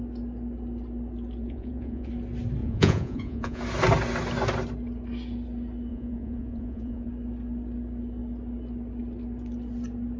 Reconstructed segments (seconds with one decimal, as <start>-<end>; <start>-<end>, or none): 1.4-2.1; 2.6-3.6; 5.9-7.1